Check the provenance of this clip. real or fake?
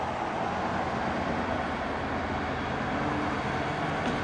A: real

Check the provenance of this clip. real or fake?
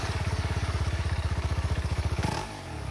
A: fake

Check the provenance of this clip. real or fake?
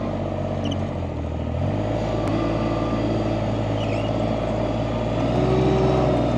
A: real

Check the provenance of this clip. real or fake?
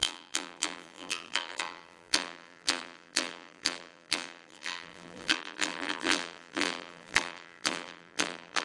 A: fake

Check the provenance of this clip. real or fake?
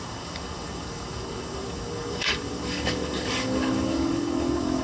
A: fake